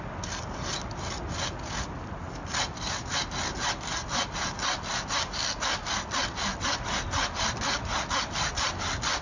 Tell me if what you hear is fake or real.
real